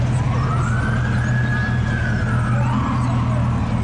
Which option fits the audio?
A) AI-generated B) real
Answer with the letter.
B